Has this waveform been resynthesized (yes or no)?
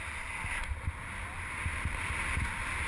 no